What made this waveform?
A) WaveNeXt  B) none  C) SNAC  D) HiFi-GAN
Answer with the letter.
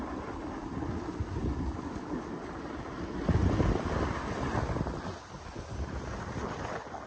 B